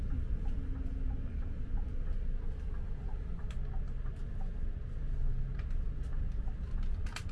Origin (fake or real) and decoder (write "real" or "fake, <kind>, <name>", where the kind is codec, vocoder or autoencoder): real